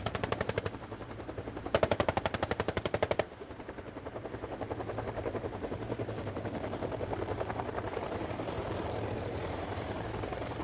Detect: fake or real fake